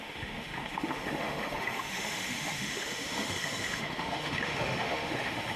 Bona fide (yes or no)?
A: no